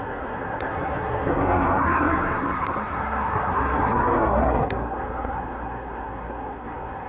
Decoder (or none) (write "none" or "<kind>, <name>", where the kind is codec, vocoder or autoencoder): codec, SNAC